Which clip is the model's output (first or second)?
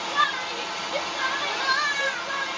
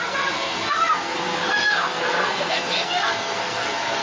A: second